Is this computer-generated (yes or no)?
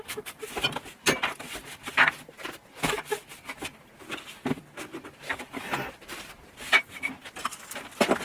no